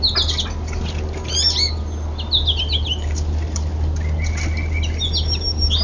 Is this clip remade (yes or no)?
no